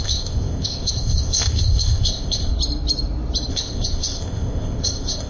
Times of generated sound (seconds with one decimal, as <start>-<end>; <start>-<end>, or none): 0.0-2.5; 3.5-5.3